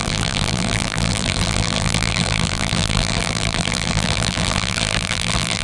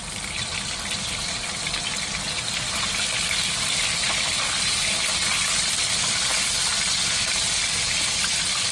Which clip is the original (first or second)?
second